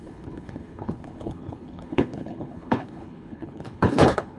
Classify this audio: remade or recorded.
remade